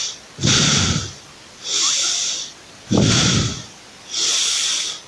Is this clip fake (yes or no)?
no